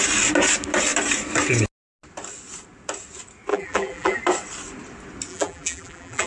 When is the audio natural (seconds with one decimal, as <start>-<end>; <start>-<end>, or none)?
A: 0.0-3.5; 4.2-5.3